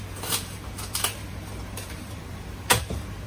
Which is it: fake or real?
fake